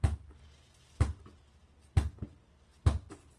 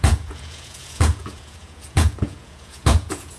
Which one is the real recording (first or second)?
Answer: first